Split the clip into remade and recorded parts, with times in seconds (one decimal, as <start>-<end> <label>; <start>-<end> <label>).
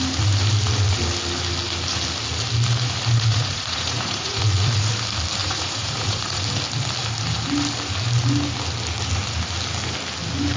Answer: 0.0-3.3 recorded; 3.3-4.9 remade; 4.9-5.4 recorded; 5.4-6.4 remade; 6.4-10.6 recorded